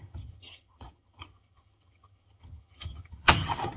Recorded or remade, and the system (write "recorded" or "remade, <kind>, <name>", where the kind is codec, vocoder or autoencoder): remade, vocoder, HiFi-GAN